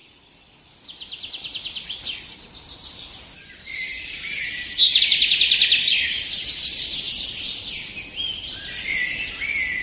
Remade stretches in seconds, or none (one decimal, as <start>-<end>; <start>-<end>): none